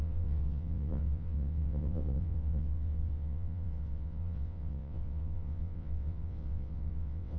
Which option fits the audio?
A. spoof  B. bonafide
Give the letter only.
A